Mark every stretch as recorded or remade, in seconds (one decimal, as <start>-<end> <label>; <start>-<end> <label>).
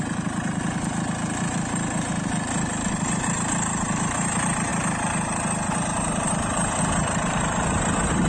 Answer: 0.0-8.3 recorded